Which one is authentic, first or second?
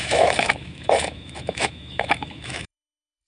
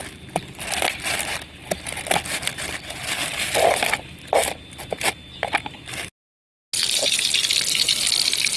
second